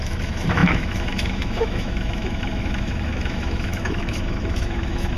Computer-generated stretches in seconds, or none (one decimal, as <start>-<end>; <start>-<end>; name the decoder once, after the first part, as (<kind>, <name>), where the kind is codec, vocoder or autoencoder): 0.0-5.2 (autoencoder, DAC-VAE)

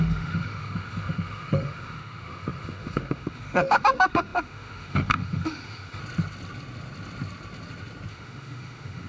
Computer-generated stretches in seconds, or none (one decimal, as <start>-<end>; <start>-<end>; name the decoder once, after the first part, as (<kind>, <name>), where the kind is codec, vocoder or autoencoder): 0.0-6.0 (autoencoder, DAC-VAE); 8.1-9.1

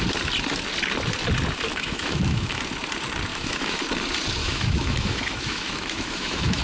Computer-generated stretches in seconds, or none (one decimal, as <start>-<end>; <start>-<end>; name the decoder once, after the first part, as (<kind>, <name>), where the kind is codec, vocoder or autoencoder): 1.7-2.6 (autoencoder, DAC-VAE); 3.3-3.8; 4.4-6.6

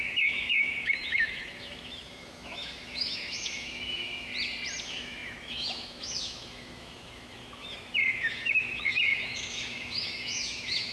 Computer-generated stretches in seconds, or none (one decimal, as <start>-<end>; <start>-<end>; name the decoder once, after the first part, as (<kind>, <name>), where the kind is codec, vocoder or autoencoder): 0.0-4.3 (autoencoder, DAC-VAE); 4.8-10.9

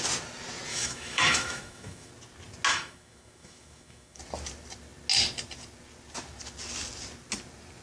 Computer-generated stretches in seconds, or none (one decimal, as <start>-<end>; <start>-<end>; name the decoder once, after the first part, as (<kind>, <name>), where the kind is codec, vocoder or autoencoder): 0.7-2.1 (autoencoder, DAC-VAE); 2.7-4.2

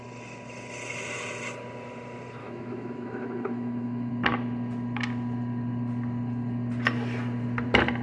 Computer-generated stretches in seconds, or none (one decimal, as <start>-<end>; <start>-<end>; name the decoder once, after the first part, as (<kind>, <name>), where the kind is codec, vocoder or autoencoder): 2.4-4.1 (autoencoder, DAC-VAE)

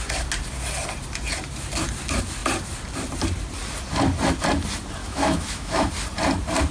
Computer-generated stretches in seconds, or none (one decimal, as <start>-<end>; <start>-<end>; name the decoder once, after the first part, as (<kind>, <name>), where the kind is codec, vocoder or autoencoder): 5.0-5.9 (autoencoder, DAC-VAE)